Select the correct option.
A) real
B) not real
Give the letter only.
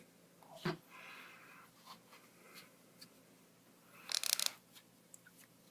A